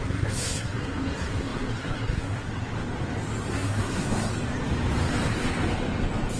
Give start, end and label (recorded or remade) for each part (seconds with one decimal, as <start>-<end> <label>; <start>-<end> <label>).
0.0-2.4 remade; 2.4-3.5 recorded; 3.5-4.3 remade; 4.3-6.4 recorded